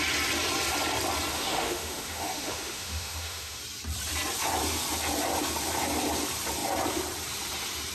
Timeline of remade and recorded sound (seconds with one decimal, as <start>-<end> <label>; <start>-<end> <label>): 0.0-1.3 recorded; 1.3-3.6 remade; 3.6-7.9 recorded